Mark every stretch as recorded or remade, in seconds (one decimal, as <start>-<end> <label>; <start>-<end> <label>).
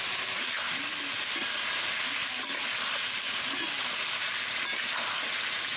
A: 0.0-5.8 recorded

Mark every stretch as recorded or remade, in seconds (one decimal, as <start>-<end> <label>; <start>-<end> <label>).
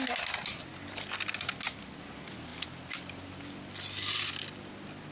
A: 0.0-5.1 recorded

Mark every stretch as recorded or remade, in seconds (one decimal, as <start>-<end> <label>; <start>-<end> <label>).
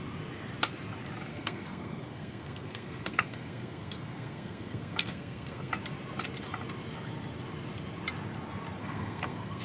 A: 0.0-1.3 recorded; 1.3-5.7 remade; 5.7-8.8 recorded; 8.8-9.6 remade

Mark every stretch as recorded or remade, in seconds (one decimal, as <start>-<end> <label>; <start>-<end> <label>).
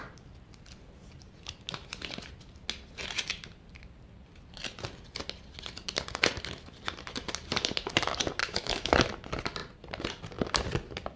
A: 0.0-8.4 recorded; 8.4-9.1 remade; 9.1-11.2 recorded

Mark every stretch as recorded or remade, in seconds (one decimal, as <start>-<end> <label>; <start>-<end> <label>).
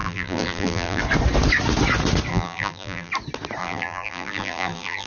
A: 0.0-1.0 remade; 1.0-2.3 recorded; 2.3-3.1 remade; 3.1-3.6 recorded; 3.6-5.1 remade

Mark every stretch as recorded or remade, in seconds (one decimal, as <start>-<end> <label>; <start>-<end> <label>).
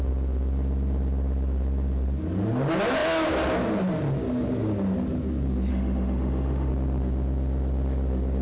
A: 0.0-5.7 recorded; 5.7-6.7 remade; 6.7-8.4 recorded